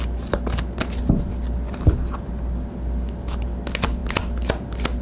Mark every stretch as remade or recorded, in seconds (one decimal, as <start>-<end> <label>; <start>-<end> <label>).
0.0-5.0 recorded